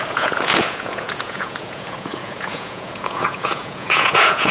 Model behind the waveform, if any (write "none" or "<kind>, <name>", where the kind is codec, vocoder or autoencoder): vocoder, Vocos